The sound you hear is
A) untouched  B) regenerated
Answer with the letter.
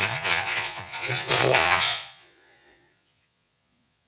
B